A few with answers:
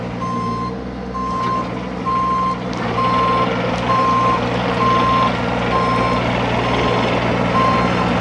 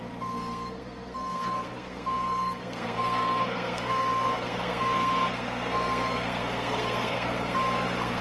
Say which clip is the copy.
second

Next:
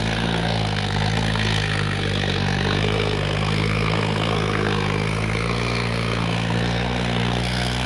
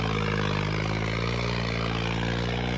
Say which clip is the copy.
first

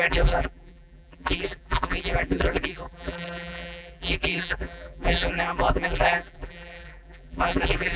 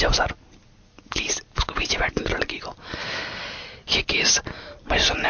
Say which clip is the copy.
first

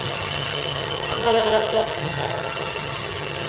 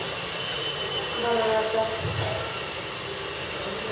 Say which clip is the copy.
first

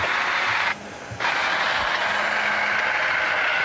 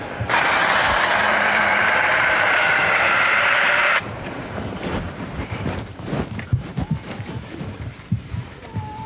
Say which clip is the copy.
second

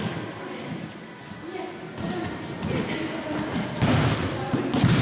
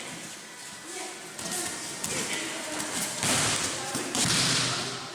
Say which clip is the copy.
first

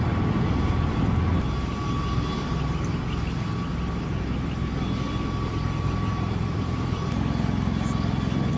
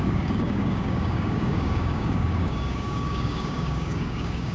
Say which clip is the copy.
second